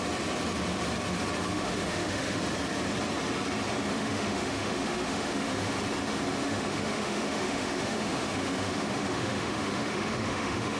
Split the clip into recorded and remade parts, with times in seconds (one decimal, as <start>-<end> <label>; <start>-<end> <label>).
0.0-1.5 recorded; 1.5-2.4 remade; 2.4-3.9 recorded; 3.9-5.7 remade; 5.7-6.4 recorded; 6.4-10.8 remade